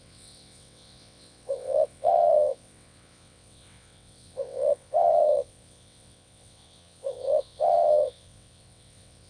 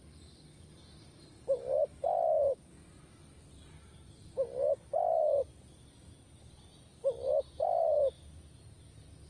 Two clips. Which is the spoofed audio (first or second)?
first